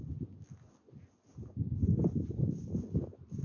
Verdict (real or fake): real